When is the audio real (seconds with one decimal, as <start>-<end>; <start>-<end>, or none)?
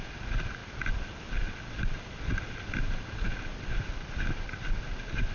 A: 0.0-0.6; 3.8-5.3